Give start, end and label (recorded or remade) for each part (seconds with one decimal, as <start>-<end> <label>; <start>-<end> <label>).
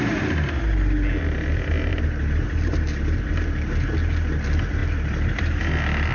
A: 0.0-6.1 recorded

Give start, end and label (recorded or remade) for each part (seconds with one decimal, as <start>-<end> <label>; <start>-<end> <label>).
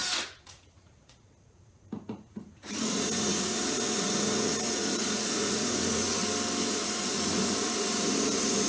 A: 0.0-6.2 remade; 6.2-6.7 recorded; 6.7-8.7 remade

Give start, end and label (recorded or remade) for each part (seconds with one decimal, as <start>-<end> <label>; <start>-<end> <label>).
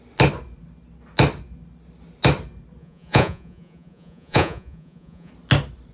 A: 0.0-2.8 recorded; 2.8-5.3 remade; 5.3-5.9 recorded